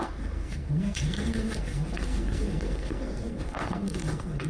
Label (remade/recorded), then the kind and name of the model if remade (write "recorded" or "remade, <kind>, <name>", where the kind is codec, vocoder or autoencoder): remade, codec, SNAC